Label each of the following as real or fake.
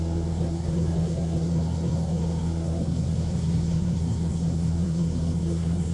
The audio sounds fake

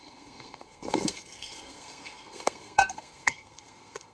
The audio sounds fake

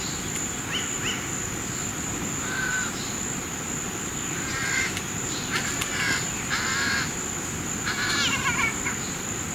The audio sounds real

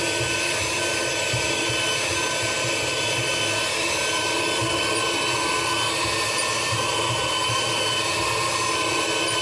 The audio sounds real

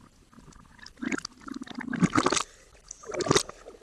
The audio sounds real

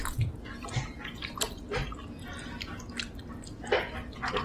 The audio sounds real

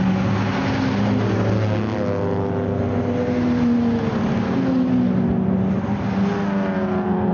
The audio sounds real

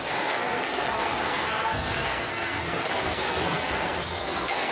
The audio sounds fake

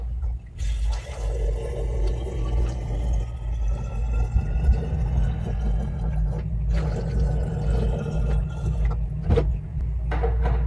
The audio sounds real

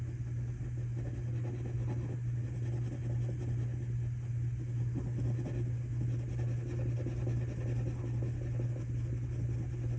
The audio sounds real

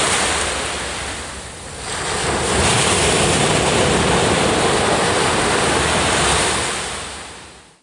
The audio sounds real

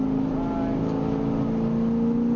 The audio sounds real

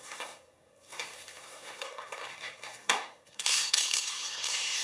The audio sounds fake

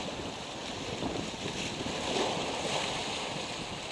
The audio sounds real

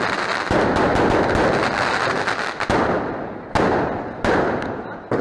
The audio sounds real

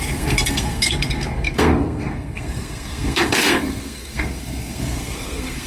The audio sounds fake